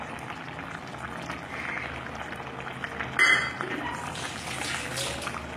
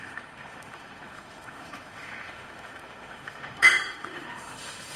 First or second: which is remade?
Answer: second